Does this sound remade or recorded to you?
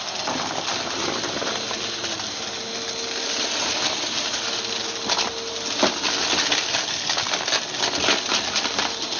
recorded